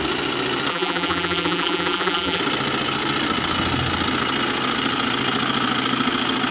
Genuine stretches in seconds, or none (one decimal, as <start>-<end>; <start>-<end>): 0.0-0.7; 2.4-6.5